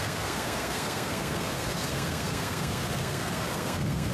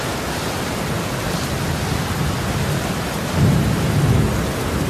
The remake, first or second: first